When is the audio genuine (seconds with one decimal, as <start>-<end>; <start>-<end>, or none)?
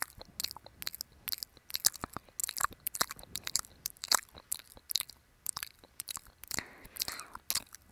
0.0-2.4; 7.1-7.9